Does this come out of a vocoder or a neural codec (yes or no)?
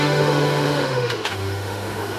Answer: yes